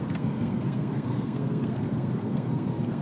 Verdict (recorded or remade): remade